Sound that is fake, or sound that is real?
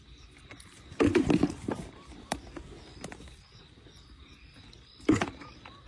fake